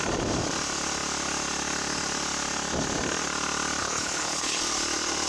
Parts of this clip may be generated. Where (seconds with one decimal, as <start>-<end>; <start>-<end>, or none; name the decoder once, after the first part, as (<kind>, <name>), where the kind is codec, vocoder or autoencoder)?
3.8-4.6 (codec, HILCodec)

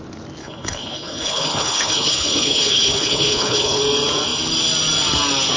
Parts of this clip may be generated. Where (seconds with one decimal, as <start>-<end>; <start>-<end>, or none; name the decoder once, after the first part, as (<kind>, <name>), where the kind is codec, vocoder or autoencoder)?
0.4-3.8 (codec, HILCodec)

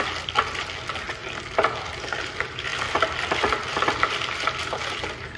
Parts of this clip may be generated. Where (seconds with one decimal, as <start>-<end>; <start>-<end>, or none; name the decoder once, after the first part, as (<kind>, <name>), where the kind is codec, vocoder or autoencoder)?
none

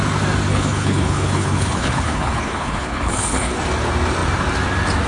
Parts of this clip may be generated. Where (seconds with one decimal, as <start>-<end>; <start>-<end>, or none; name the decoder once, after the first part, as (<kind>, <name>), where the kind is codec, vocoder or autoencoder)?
0.5-3.6 (codec, HILCodec)

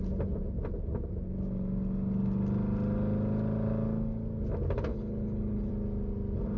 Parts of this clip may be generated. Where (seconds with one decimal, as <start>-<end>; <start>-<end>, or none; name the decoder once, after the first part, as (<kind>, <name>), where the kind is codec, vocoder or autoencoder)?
4.9-5.7 (codec, HILCodec)

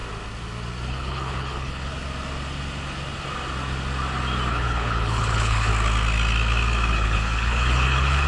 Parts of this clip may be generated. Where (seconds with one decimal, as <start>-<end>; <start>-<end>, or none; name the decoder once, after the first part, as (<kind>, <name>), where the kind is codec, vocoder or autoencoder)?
0.9-1.9 (codec, HILCodec); 4.5-5.7; 6.9-8.3

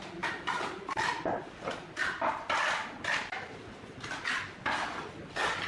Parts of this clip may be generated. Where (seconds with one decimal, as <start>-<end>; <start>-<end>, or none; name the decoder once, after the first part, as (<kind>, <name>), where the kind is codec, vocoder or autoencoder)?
none

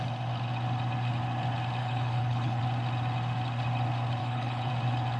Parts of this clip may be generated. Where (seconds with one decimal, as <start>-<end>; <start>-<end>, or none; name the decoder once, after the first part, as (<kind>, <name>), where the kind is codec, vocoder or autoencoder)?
1.8-2.6 (codec, HILCodec); 4.2-4.7